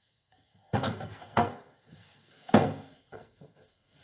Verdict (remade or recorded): remade